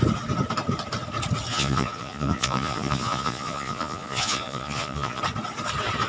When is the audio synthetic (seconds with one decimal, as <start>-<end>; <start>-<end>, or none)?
1.5-5.2